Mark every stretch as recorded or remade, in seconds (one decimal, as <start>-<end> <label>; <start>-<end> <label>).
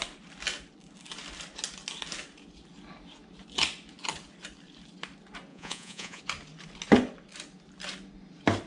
0.0-5.5 recorded; 5.5-6.2 remade; 6.2-8.7 recorded